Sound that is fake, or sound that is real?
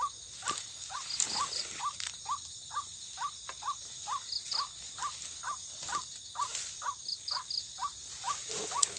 real